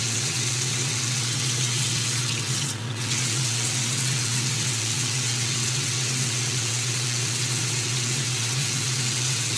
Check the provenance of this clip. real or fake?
fake